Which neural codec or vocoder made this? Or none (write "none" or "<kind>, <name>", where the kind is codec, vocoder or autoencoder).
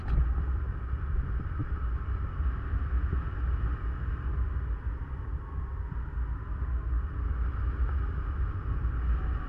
none